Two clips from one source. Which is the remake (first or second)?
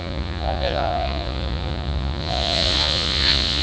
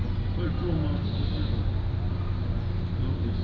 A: first